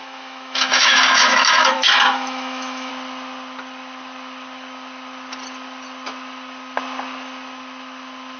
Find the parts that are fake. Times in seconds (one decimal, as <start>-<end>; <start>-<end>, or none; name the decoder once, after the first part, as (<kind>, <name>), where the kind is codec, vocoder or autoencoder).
0.0-2.9 (autoencoder, DAC-VAE)